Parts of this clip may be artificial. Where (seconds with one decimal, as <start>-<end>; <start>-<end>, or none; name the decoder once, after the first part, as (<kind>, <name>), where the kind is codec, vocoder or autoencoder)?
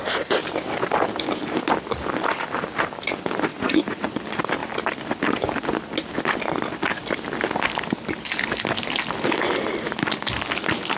3.5-4.1 (vocoder, Vocos)